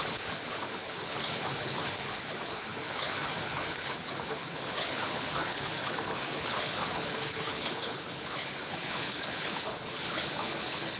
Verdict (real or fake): fake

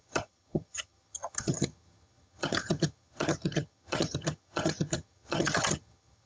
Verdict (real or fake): fake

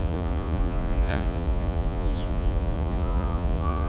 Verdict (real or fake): fake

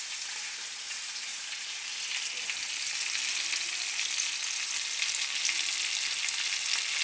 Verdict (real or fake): real